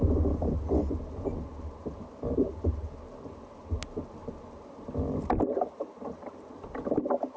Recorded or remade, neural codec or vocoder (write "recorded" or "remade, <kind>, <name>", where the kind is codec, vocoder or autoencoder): recorded